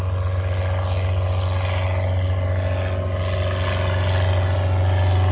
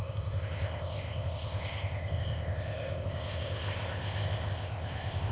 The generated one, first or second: second